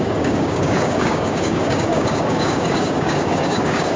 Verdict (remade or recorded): remade